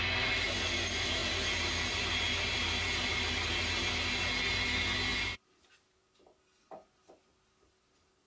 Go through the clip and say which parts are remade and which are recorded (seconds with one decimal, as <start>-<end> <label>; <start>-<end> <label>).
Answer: 0.0-8.3 recorded